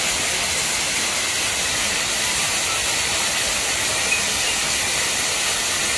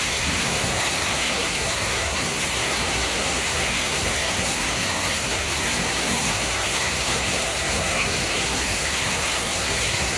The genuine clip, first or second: first